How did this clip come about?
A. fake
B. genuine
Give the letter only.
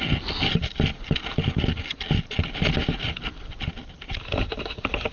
B